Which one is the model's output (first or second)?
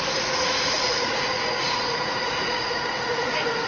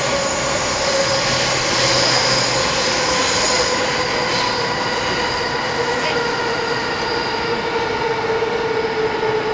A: first